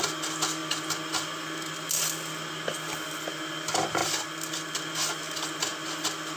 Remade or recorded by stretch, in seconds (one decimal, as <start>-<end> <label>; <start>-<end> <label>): 0.0-6.4 recorded